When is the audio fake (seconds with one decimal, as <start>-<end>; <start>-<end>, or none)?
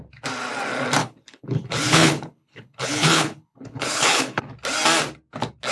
1.0-4.4